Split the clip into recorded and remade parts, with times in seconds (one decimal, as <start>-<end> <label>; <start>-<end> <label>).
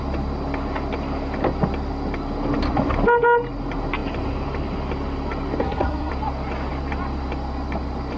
0.0-5.6 recorded; 5.6-6.1 remade; 6.1-8.2 recorded